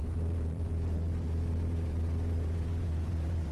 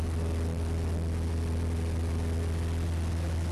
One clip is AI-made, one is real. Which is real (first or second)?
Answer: second